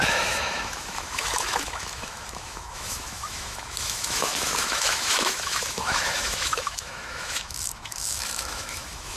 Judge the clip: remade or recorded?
remade